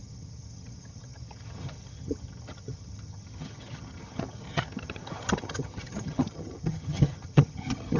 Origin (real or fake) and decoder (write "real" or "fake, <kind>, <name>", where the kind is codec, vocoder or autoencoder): fake, vocoder, HiFi-GAN